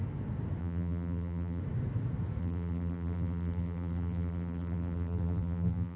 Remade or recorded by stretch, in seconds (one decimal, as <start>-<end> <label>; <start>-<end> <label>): 0.0-0.6 recorded; 0.6-1.6 remade; 1.6-2.4 recorded; 2.4-6.0 remade